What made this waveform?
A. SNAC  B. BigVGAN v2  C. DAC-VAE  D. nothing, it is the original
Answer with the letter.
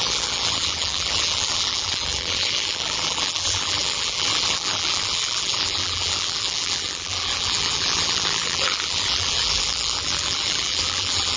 B